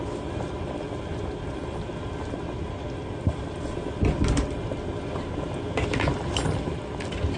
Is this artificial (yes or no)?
no